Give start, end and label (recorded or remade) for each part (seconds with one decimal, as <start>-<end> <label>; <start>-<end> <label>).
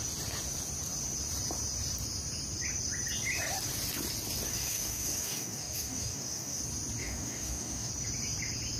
0.0-4.5 recorded; 4.5-6.6 remade; 6.6-7.0 recorded; 7.0-7.9 remade; 7.9-8.8 recorded